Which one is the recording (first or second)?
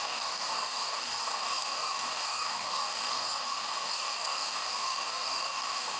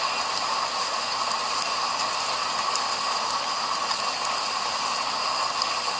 second